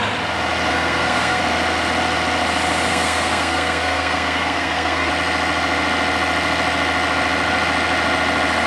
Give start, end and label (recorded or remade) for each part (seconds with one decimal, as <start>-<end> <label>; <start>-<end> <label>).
0.0-0.7 recorded; 0.7-1.4 remade; 1.4-2.9 recorded; 2.9-5.1 remade; 5.1-8.7 recorded